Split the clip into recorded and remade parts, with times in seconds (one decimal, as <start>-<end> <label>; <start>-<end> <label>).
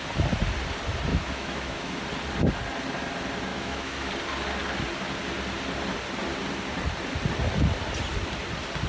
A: 0.0-1.1 recorded; 1.1-2.0 remade; 2.0-3.5 recorded; 3.5-4.1 remade; 4.1-8.9 recorded